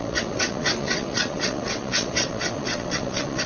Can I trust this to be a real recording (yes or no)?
no